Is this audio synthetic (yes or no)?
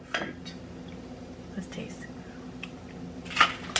no